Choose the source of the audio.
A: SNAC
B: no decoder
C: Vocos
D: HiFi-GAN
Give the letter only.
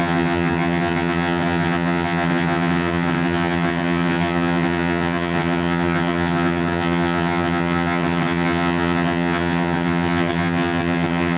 D